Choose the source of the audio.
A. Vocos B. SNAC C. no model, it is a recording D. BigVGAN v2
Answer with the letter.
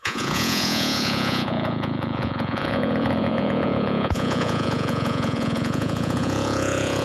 A